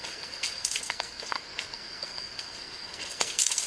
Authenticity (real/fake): fake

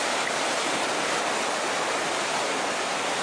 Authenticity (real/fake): real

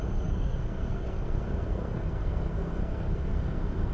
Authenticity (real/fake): fake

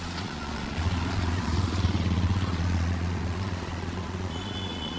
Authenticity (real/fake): fake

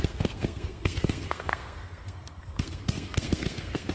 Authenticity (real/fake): fake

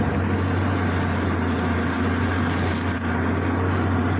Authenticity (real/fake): real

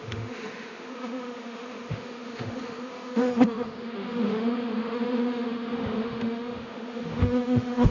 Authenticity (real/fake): fake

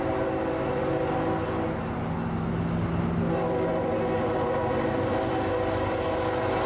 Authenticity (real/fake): real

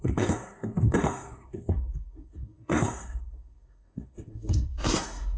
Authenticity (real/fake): fake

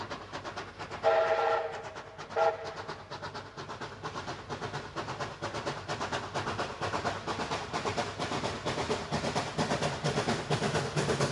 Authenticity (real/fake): real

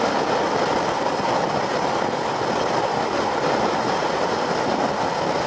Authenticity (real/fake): real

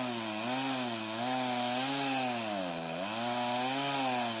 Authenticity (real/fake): real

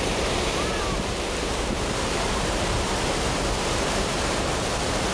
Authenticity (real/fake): fake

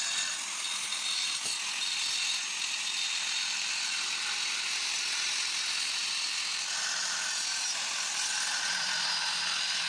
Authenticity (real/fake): real